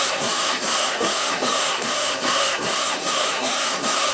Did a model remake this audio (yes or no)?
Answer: yes